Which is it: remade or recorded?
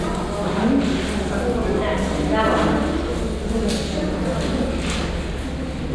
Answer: recorded